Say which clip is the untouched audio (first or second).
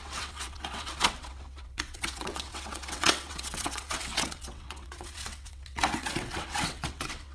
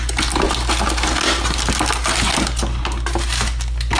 second